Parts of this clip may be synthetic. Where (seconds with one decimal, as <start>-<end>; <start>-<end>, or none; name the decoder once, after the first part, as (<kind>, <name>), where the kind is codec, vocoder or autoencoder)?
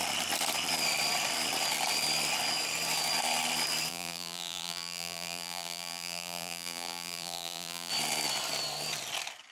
3.9-7.9 (vocoder, BigVGAN v2)